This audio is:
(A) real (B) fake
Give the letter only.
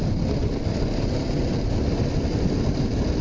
A